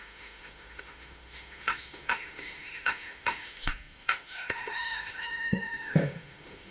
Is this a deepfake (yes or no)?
yes